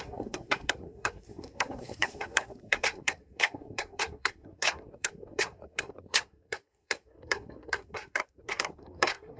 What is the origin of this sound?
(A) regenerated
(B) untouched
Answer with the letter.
A